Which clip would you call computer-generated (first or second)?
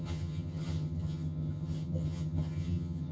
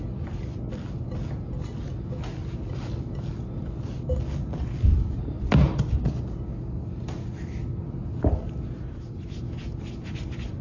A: first